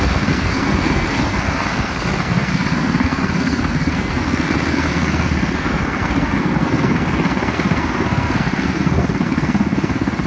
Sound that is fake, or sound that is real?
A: fake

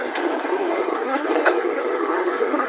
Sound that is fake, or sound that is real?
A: fake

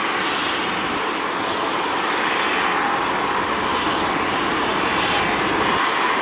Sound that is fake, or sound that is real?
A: real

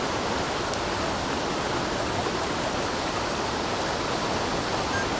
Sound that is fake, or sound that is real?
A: real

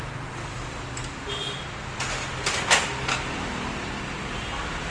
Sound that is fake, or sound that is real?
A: real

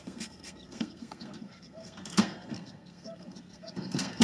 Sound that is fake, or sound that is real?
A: fake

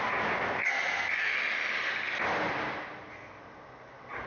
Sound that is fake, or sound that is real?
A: real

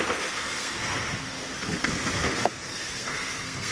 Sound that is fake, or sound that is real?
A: fake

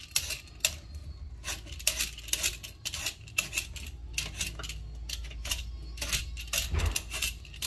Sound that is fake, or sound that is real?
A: real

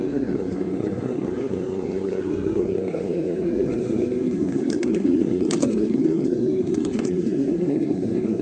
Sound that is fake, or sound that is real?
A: fake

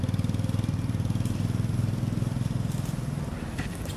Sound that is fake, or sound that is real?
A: real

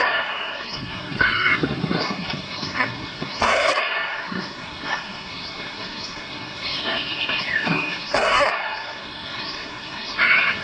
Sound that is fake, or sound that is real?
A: fake